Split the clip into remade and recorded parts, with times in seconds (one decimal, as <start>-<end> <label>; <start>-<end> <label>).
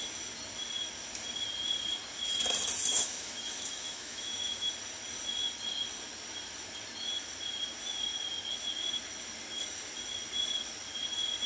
0.0-2.9 recorded; 2.9-4.7 remade; 4.7-11.5 recorded